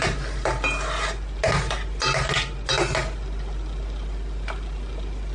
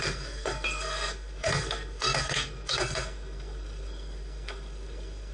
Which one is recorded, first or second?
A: first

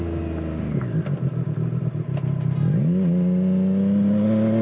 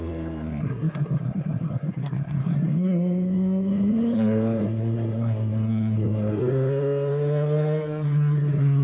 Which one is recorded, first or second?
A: first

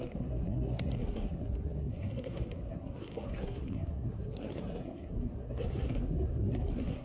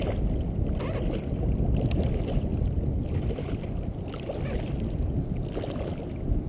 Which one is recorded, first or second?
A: second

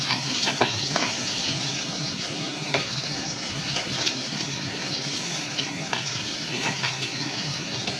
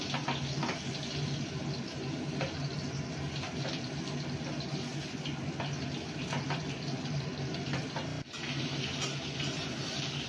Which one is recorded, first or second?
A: second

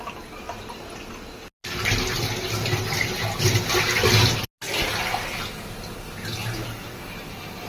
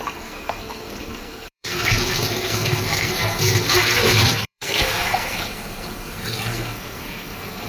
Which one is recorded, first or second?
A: first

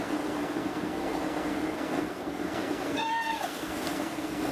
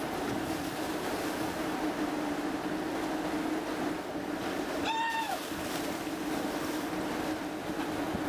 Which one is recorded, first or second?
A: second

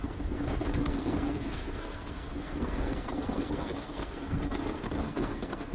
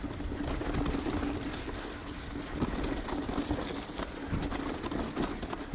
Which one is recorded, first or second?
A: second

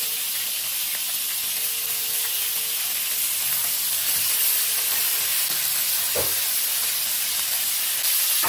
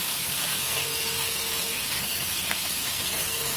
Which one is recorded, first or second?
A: first